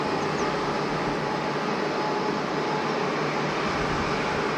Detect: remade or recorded recorded